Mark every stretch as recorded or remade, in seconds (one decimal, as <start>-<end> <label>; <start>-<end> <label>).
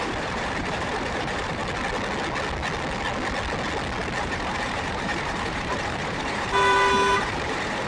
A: 0.0-1.6 remade; 1.6-4.2 recorded; 4.2-7.9 remade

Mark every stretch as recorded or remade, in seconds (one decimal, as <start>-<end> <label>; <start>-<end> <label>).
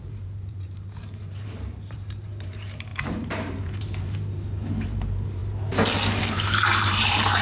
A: 0.0-5.4 remade; 5.4-6.2 recorded; 6.2-7.4 remade